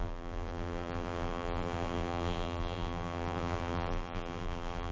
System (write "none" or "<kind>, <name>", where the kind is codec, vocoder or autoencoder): vocoder, BigVGAN v2